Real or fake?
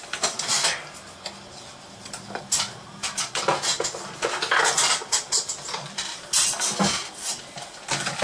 real